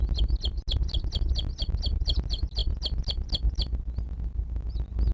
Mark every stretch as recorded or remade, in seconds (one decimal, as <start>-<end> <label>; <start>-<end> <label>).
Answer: 0.0-5.1 recorded